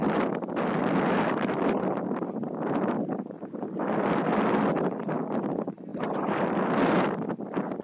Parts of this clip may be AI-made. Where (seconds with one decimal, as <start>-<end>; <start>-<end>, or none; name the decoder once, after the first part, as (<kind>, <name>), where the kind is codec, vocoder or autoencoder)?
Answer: none